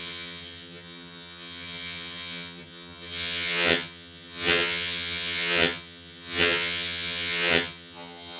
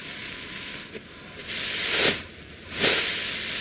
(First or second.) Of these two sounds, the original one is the second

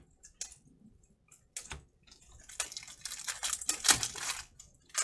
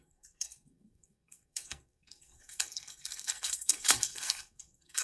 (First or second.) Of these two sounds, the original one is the first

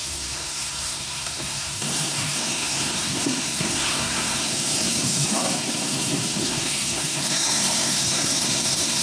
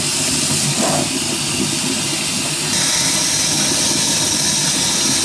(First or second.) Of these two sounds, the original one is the second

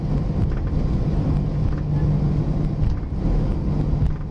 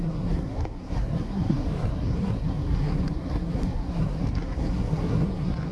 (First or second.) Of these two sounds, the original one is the first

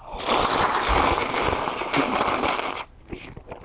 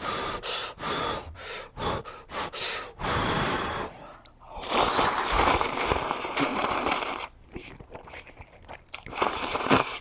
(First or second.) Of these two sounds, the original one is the first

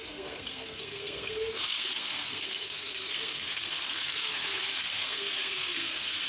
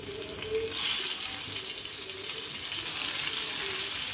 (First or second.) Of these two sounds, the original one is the second